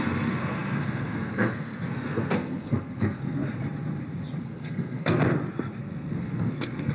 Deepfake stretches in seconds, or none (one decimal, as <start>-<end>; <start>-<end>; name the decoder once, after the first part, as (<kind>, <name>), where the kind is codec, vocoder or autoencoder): 0.0-3.2 (codec, SNAC); 4.4-5.2; 5.8-6.9